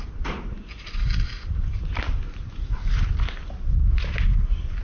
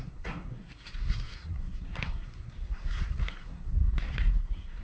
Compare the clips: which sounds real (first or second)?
first